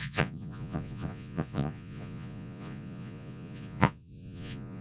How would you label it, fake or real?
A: fake